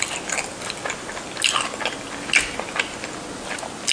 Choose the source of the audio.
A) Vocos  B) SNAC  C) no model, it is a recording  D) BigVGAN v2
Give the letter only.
C